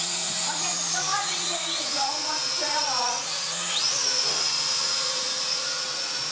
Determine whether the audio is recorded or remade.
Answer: remade